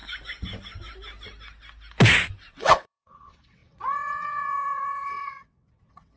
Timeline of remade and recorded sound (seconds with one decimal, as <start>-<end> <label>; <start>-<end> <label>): 0.0-2.5 recorded; 2.5-6.2 remade